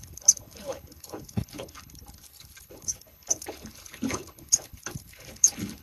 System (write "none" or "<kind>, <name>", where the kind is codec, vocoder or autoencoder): codec, HILCodec